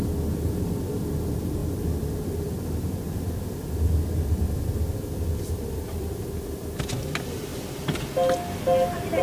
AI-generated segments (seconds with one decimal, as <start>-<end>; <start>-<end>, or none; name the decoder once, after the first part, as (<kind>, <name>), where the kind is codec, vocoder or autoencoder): 1.6-6.8 (vocoder, BigVGAN v2)